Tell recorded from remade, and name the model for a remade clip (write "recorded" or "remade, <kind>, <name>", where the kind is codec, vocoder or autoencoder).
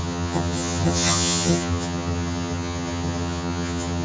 remade, vocoder, HiFi-GAN